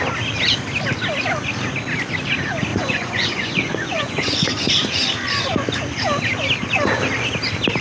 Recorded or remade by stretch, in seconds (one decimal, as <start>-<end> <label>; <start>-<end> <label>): 0.0-2.7 recorded; 2.7-5.1 remade; 5.1-7.8 recorded